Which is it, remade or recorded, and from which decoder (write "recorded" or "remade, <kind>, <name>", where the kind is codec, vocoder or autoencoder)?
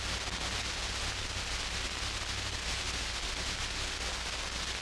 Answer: recorded